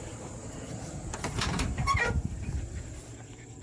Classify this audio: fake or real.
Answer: fake